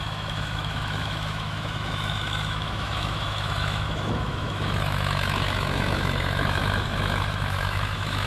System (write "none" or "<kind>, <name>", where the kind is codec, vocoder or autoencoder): autoencoder, DAC-VAE